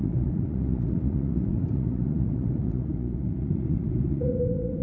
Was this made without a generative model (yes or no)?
no